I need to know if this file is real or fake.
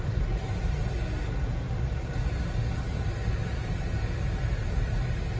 real